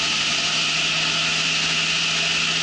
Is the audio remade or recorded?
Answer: recorded